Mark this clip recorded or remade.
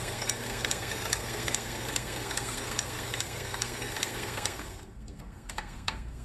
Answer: remade